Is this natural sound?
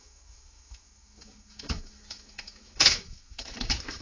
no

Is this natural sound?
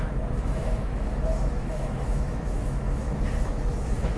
no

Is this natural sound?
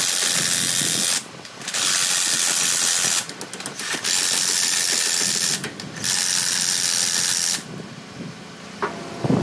yes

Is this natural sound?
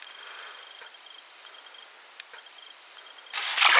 yes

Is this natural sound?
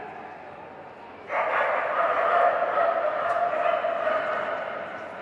yes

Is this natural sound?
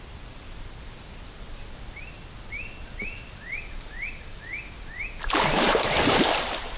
yes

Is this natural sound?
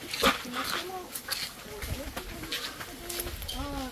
yes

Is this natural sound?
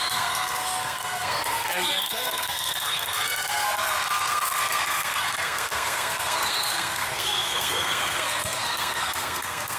no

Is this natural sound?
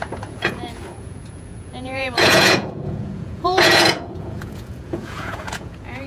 no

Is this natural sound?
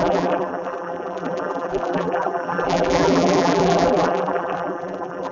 no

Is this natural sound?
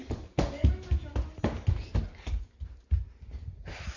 yes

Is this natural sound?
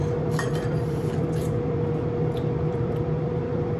no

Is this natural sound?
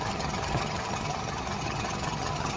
no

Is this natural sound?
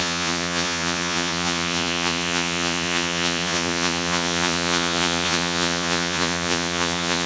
no